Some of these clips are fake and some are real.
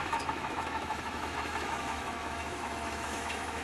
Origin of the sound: fake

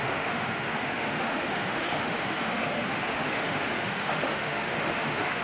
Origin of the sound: fake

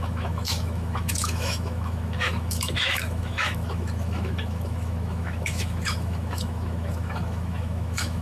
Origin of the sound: fake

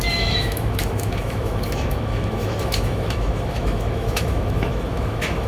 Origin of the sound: fake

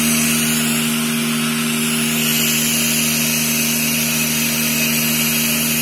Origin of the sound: real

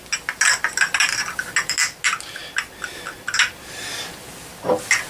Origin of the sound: real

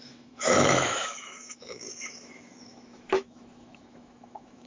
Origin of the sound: fake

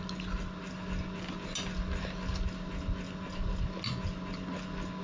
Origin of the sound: real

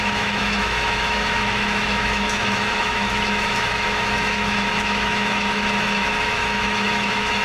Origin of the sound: fake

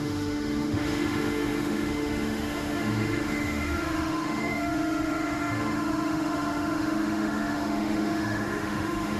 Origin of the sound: fake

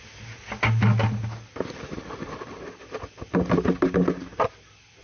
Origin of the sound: real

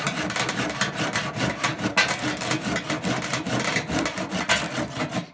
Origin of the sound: real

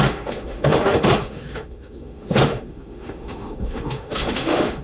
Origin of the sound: fake